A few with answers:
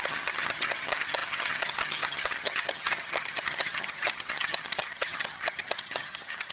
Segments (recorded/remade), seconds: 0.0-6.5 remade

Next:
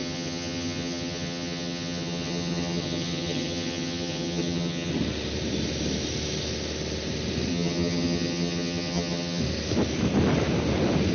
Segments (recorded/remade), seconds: 0.0-4.9 remade; 4.9-7.5 recorded; 7.5-9.4 remade; 9.4-11.1 recorded

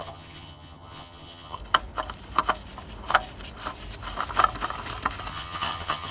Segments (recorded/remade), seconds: 0.0-1.6 remade; 1.6-5.3 recorded; 5.3-6.1 remade

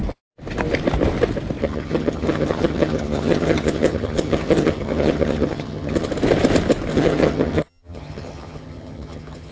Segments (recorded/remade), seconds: 0.0-1.6 recorded; 1.6-6.1 remade; 6.1-6.9 recorded; 6.9-9.5 remade

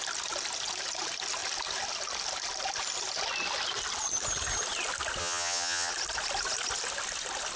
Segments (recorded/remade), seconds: 0.0-5.2 recorded; 5.2-5.9 remade; 5.9-7.6 recorded